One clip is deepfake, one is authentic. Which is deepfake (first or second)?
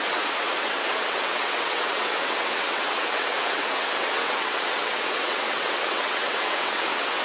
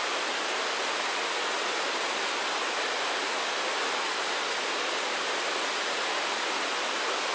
first